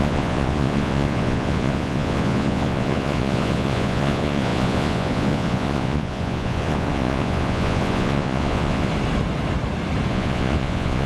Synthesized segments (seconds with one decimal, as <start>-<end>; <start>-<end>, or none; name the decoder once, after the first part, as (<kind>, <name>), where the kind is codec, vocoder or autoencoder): 0.0-8.9 (vocoder, Vocos); 10.1-11.1